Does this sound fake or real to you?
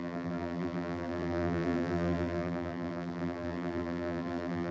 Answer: fake